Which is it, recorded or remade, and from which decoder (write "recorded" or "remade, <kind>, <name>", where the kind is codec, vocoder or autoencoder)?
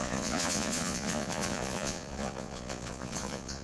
remade, vocoder, Vocos